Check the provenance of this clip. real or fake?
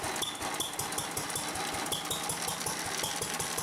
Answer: real